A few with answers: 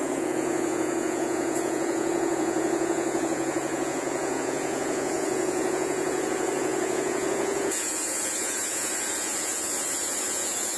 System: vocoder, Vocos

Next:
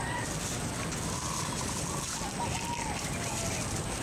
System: none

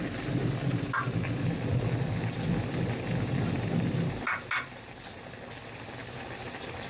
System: none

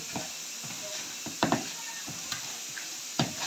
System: none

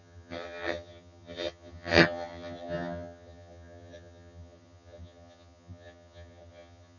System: vocoder, HiFi-GAN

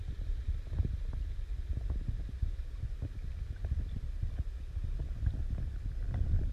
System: vocoder, BigVGAN v2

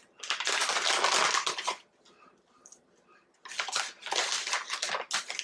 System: none